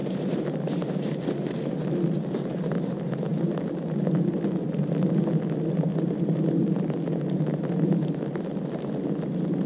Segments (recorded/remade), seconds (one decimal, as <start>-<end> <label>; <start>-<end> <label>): 0.0-1.1 remade; 1.1-5.9 recorded; 5.9-6.5 remade; 6.5-9.7 recorded